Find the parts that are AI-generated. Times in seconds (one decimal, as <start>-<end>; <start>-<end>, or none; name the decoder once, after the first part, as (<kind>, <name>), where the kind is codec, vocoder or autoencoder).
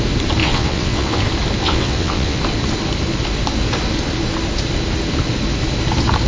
0.4-1.2 (vocoder, WaveNeXt); 1.6-2.4